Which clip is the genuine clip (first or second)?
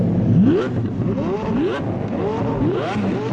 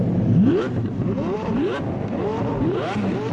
first